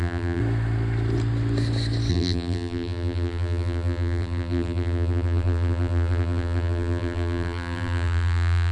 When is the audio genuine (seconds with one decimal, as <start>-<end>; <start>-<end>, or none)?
0.4-2.1